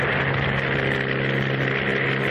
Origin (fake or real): real